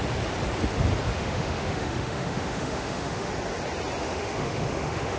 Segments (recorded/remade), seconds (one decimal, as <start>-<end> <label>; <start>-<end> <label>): 0.0-1.1 recorded; 1.1-3.3 remade; 3.3-4.0 recorded; 4.0-5.2 remade

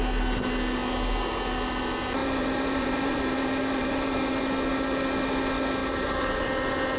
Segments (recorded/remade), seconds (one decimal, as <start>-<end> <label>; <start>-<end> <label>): 0.0-2.2 recorded; 2.2-4.4 remade; 4.4-5.8 recorded; 5.8-6.3 remade; 6.3-7.0 recorded

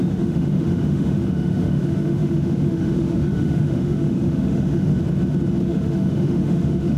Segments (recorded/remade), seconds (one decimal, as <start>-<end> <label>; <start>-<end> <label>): 0.0-4.9 remade; 4.9-5.6 recorded; 5.6-7.0 remade

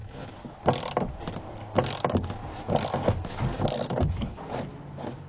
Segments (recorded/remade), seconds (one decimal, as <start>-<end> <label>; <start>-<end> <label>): 0.0-5.3 recorded

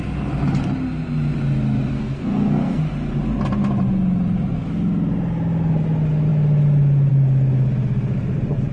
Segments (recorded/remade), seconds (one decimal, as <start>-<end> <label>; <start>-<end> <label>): 0.0-1.9 recorded; 1.9-2.8 remade; 2.8-8.7 recorded

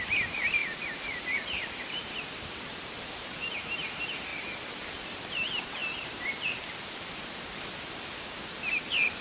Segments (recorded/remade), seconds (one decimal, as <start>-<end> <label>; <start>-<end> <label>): 0.0-4.3 remade; 4.3-5.3 recorded; 5.3-9.2 remade

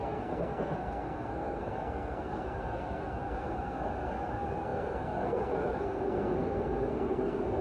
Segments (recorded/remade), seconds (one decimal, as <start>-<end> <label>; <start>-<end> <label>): 0.0-7.6 remade